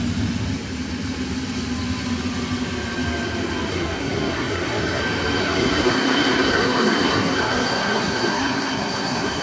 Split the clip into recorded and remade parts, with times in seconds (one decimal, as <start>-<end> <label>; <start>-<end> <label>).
0.0-3.7 recorded; 3.7-5.0 remade; 5.0-5.4 recorded; 5.4-9.4 remade